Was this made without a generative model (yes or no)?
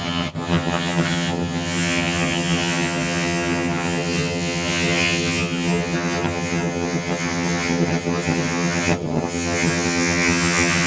no